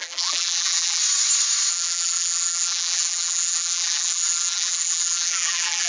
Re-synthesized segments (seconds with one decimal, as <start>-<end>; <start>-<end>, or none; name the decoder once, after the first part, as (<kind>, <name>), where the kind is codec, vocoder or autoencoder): 0.0-1.0 (vocoder, BigVGAN v2); 1.7-5.9